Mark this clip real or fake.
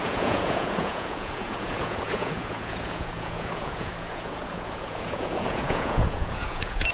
fake